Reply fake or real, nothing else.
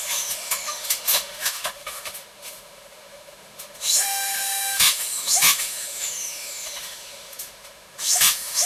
fake